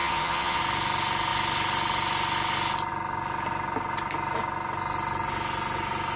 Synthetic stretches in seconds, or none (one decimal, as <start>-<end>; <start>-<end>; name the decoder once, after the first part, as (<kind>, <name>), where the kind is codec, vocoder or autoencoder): 0.0-0.6 (vocoder, HiFi-GAN)